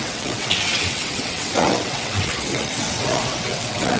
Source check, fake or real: fake